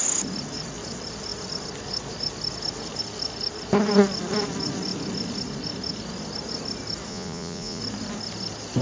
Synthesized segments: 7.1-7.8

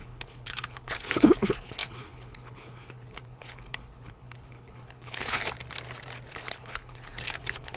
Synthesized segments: 0.0-5.4; 6.3-7.8

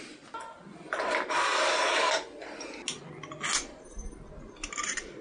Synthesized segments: none

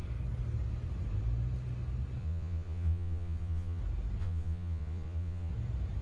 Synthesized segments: 2.2-3.8; 4.2-5.5

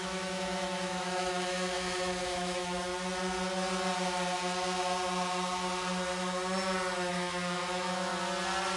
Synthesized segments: 0.0-2.9; 7.1-8.1